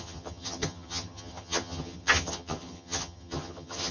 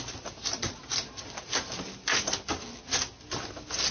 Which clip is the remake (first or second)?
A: first